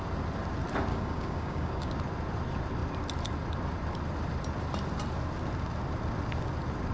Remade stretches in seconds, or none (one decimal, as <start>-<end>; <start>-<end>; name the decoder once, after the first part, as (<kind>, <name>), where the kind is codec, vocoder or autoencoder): 0.9-1.9 (codec, DAC)